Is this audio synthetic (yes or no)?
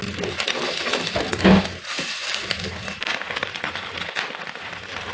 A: no